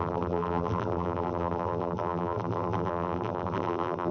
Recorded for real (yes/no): no